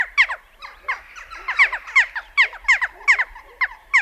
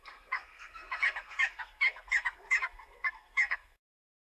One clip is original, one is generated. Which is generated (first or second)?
second